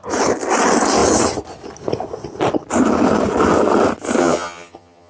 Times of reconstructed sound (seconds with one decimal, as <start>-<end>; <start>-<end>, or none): 4.2-5.1